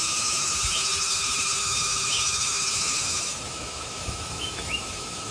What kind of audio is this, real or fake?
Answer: fake